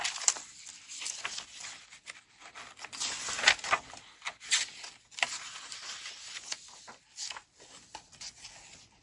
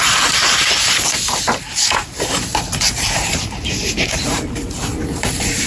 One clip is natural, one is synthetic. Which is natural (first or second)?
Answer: first